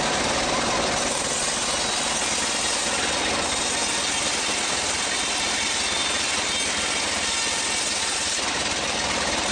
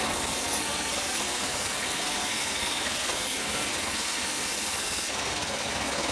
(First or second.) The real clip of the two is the first